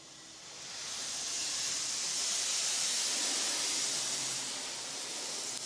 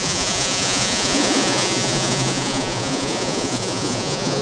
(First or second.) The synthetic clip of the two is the second